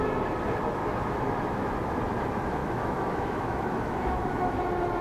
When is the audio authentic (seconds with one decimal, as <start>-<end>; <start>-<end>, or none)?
0.0-0.8; 2.0-2.6; 4.6-5.0